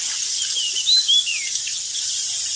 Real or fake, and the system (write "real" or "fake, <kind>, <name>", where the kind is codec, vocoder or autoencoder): real